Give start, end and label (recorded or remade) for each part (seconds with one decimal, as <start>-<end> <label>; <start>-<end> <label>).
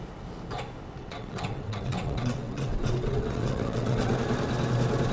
0.0-1.0 recorded; 1.0-4.1 remade; 4.1-5.1 recorded